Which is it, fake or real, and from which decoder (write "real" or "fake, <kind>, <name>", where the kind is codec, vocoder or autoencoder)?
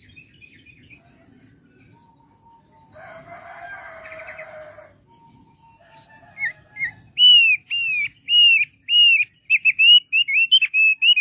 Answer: real